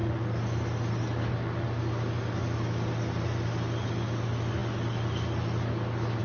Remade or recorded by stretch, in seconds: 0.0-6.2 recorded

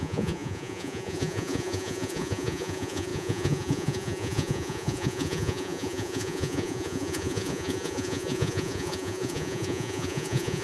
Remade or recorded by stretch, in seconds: 0.0-10.6 remade

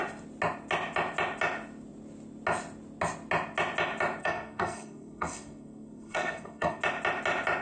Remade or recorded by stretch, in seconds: 0.0-4.2 recorded; 4.2-6.8 remade; 6.8-7.6 recorded

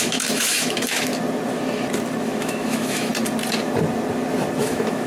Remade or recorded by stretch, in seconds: 0.0-1.1 remade; 1.1-2.2 recorded; 2.2-3.1 remade; 3.1-4.6 recorded; 4.6-5.1 remade

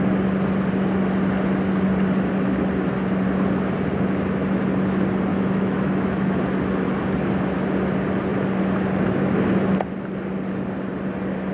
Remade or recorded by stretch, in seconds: 0.0-5.3 recorded; 5.3-6.4 remade; 6.4-11.5 recorded

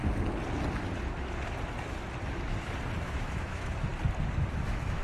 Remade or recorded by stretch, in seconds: 0.0-3.0 recorded; 3.0-3.9 remade; 3.9-4.5 recorded; 4.5-5.0 remade

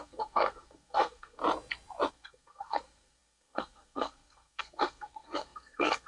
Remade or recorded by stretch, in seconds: 0.0-1.4 remade; 1.4-2.1 recorded; 2.1-6.1 remade

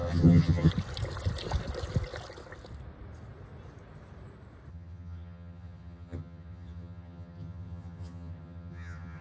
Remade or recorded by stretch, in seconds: 0.0-0.7 remade; 0.7-4.7 recorded; 4.7-9.2 remade